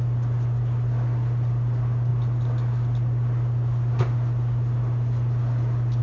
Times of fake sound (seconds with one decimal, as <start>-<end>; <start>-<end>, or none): none